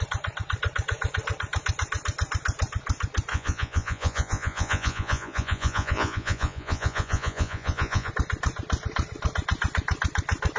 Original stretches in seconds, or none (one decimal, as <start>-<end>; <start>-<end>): 0.0-3.3; 8.1-10.6

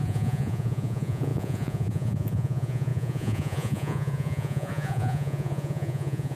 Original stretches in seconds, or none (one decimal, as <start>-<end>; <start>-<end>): none

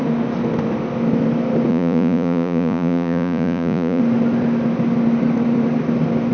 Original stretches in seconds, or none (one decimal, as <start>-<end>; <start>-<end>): 0.0-1.7; 4.0-6.3

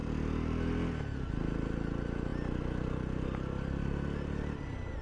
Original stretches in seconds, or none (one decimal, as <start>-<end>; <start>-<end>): 0.0-5.0

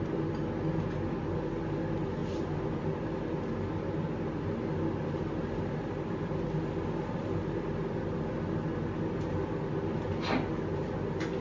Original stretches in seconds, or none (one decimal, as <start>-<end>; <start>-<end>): 0.0-11.4